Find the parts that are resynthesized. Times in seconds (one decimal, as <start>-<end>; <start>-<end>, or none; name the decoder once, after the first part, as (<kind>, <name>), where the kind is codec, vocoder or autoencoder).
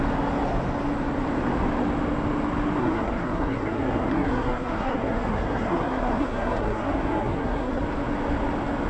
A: 2.8-7.8 (codec, SNAC)